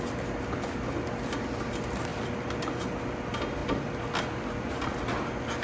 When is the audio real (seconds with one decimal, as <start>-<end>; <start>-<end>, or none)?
0.0-5.6